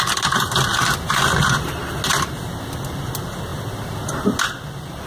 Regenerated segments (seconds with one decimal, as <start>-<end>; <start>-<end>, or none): none